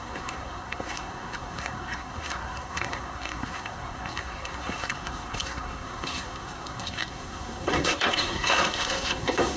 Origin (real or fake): fake